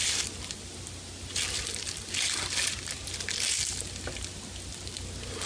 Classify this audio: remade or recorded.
recorded